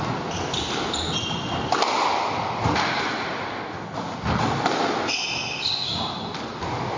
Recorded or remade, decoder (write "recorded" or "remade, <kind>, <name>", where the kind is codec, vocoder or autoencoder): recorded